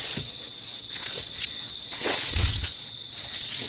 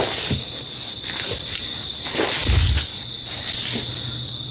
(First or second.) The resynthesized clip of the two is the first